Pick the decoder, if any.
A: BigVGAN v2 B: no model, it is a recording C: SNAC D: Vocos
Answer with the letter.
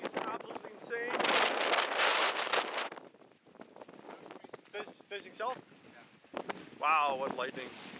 B